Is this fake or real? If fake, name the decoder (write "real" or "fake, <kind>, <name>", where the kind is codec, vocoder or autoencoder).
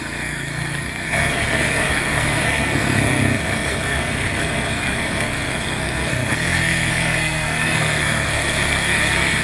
fake, codec, SNAC